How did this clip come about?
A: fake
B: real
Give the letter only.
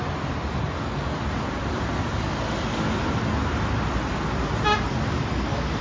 B